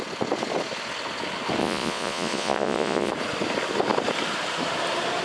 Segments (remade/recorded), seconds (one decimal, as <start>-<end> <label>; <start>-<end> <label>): 0.0-1.6 recorded; 1.6-3.1 remade; 3.1-5.2 recorded